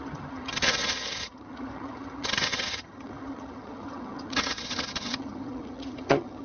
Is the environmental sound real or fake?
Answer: fake